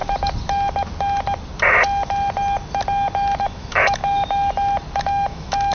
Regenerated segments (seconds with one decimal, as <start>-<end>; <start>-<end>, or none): 3.4-4.0; 5.0-5.7